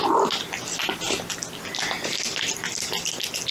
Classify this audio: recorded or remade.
recorded